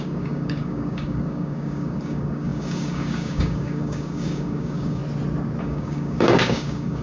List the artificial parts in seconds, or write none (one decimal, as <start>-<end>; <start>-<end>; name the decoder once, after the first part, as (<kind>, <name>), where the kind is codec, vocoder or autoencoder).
0.0-5.0 (codec, DAC); 5.6-7.0